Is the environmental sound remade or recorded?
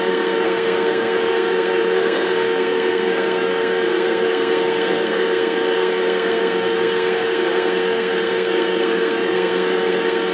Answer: remade